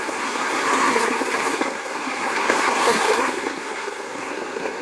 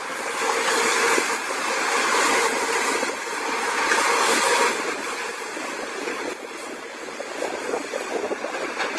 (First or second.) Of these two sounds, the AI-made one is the first